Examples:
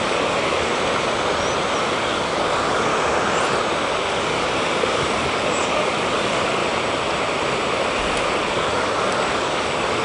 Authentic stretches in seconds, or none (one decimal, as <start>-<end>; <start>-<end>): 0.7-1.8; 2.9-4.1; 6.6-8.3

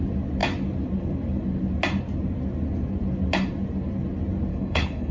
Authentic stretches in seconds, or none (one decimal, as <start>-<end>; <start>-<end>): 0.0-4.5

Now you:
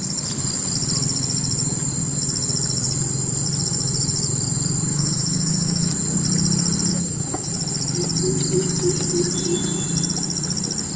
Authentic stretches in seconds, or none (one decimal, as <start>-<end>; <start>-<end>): 0.0-4.9; 5.9-6.9; 7.5-11.0